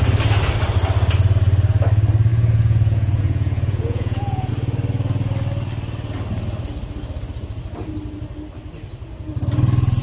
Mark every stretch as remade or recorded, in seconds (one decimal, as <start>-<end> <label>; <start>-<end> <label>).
0.0-2.3 recorded; 2.3-4.5 remade; 4.5-10.0 recorded